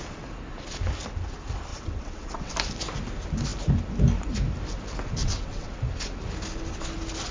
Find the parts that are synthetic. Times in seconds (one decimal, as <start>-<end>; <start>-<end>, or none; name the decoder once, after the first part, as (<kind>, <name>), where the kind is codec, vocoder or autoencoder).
1.7-2.5 (vocoder, WaveNeXt); 5.2-5.7